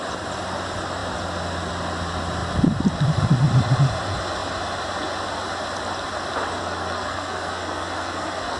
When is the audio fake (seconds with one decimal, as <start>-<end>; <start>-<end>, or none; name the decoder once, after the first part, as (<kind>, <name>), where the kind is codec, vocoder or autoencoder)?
6.6-8.6 (codec, SNAC)